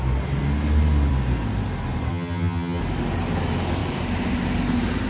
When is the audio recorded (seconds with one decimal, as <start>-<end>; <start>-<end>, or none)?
0.0-2.1; 2.8-5.1